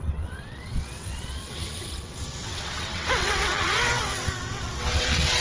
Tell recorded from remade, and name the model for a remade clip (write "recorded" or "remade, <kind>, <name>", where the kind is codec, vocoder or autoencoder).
remade, vocoder, WaveNeXt